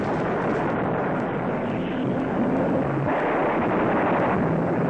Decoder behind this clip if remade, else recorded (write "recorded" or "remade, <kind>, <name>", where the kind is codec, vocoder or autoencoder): recorded